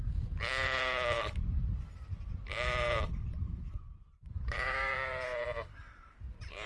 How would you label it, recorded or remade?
remade